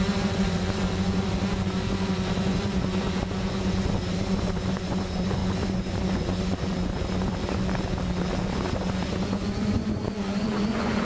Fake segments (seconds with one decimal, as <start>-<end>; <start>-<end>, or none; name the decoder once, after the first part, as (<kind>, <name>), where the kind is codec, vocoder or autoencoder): 0.0-7.6 (vocoder, Vocos); 8.4-11.0